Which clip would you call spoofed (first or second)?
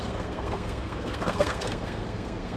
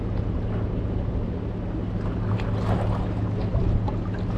first